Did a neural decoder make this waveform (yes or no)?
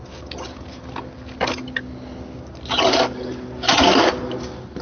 no